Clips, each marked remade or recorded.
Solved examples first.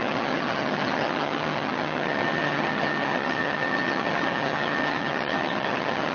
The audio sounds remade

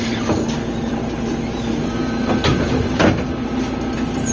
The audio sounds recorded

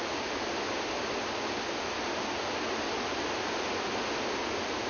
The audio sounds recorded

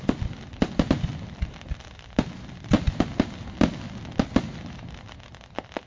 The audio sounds recorded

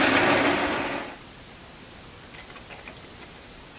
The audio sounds recorded